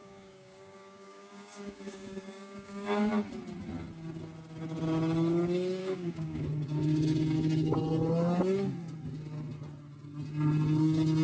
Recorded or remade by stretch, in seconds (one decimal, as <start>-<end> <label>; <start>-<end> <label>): 0.0-3.1 remade; 3.1-5.8 recorded; 5.8-6.4 remade; 6.4-11.2 recorded